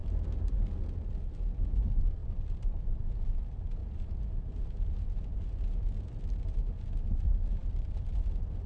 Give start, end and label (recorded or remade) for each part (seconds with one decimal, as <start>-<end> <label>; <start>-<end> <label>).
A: 0.0-1.6 remade; 1.6-2.2 recorded; 2.2-3.3 remade; 3.3-7.6 recorded; 7.6-8.7 remade